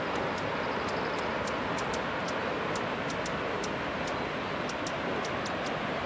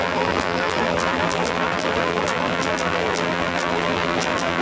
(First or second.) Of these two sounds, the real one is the first